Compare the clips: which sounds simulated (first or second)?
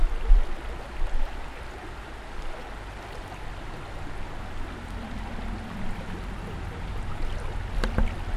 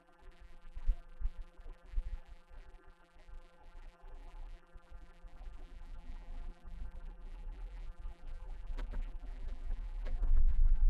second